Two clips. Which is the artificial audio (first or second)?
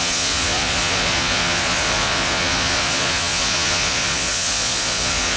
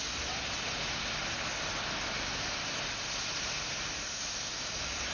first